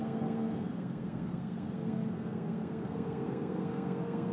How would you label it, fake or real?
fake